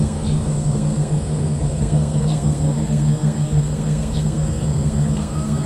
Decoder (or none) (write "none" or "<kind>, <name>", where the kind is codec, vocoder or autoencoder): codec, SNAC